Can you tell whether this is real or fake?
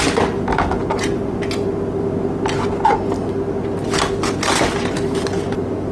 real